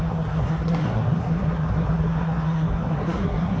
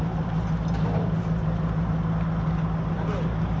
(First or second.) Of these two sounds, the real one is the second